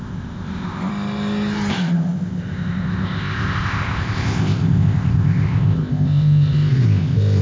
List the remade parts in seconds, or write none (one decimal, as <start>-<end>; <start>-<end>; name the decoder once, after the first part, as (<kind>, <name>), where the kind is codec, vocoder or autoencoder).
0.0-0.9 (codec, ZipCodec); 1.7-7.4